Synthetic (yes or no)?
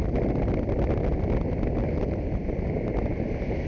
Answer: no